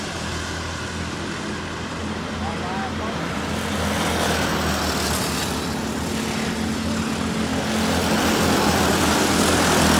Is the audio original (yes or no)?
yes